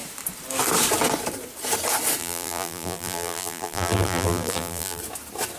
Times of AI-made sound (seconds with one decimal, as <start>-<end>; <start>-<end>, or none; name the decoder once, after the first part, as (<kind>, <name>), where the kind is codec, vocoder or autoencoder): 2.2-5.0 (vocoder, BigVGAN v2)